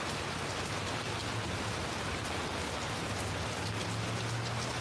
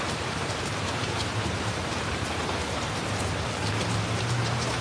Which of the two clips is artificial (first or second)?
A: second